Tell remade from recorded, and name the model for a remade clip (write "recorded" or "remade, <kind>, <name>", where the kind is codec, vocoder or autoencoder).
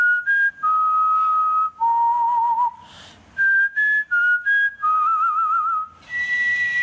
recorded